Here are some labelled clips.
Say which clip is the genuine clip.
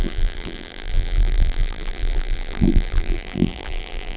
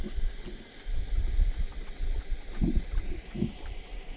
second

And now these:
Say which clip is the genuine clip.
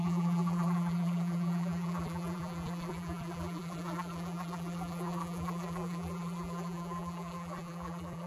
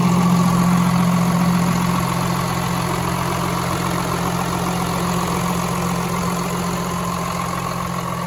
second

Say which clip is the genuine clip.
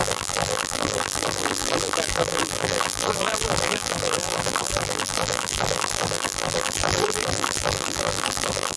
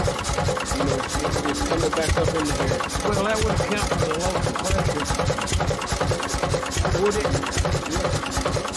second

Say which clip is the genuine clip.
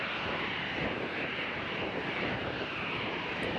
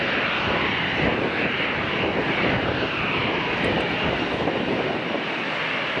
second